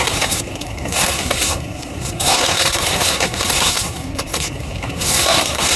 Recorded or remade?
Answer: remade